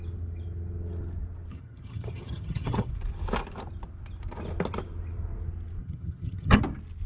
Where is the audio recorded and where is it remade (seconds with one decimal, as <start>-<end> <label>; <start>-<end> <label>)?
0.0-1.5 recorded; 1.5-2.9 remade; 2.9-5.8 recorded; 5.8-6.6 remade; 6.6-7.1 recorded

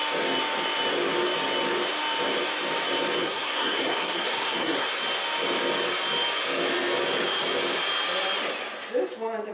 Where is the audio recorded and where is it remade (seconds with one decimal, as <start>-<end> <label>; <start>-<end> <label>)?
0.0-3.2 recorded; 3.2-4.9 remade; 4.9-9.5 recorded

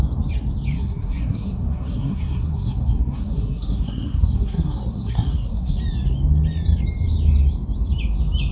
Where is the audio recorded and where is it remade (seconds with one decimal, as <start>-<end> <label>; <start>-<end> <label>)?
0.0-0.7 recorded; 0.7-5.8 remade; 5.8-8.5 recorded

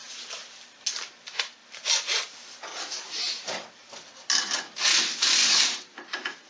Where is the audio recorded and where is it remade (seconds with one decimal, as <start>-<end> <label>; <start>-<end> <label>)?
0.0-2.7 recorded; 2.7-3.7 remade; 3.7-5.4 recorded; 5.4-6.5 remade

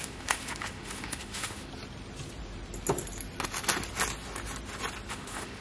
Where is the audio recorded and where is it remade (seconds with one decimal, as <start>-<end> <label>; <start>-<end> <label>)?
0.0-1.7 remade; 1.7-5.1 recorded; 5.1-5.6 remade

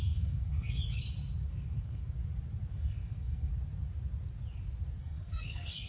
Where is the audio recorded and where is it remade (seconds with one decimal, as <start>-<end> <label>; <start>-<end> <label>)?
0.0-0.8 remade; 0.8-1.5 recorded; 1.5-2.0 remade; 2.0-2.7 recorded; 2.7-3.5 remade; 3.5-5.0 recorded; 5.0-5.9 remade

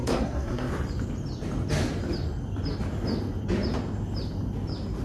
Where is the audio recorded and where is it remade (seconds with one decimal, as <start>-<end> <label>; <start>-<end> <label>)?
0.0-0.7 remade; 0.7-5.0 recorded

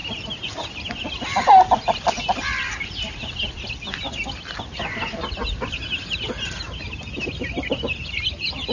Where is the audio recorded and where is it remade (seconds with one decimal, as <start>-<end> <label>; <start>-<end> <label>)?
0.0-8.7 recorded